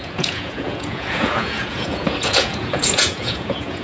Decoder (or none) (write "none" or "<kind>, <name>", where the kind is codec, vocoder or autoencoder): vocoder, Vocos